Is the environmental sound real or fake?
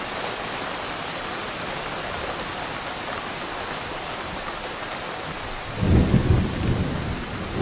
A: real